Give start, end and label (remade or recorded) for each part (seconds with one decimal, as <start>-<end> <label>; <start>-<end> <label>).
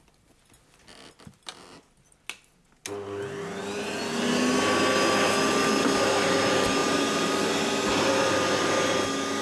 0.0-6.8 recorded; 6.8-7.4 remade; 7.4-9.4 recorded